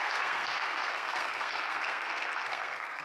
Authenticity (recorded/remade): remade